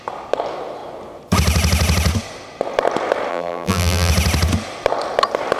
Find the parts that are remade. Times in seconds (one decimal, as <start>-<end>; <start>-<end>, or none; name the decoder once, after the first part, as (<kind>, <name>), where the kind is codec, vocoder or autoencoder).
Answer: 3.3-4.1 (vocoder, BigVGAN v2)